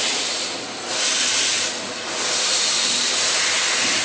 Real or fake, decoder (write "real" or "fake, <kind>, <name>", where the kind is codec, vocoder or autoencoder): real